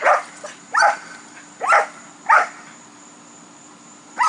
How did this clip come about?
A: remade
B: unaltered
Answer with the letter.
A